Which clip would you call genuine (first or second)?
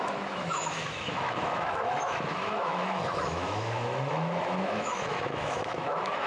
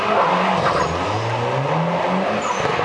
second